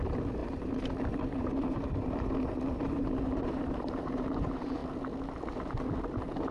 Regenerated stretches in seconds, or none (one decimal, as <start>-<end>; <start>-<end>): 0.0-4.8; 6.1-6.5

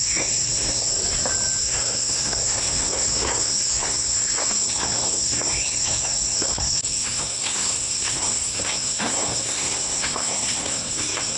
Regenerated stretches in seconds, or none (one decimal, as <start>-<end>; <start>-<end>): 0.0-0.9; 1.6-11.4